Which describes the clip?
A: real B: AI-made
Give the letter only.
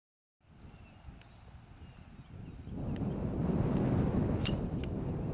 A